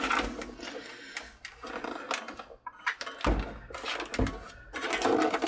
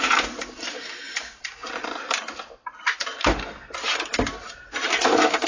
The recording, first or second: first